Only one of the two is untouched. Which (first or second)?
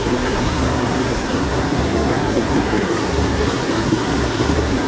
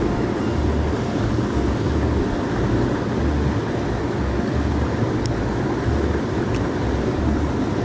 second